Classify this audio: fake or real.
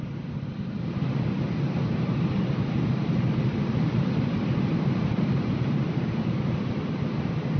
real